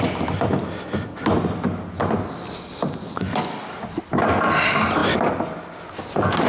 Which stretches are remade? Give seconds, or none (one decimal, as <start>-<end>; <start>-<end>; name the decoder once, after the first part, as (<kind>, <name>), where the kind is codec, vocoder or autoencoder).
3.0-3.8 (codec, DAC)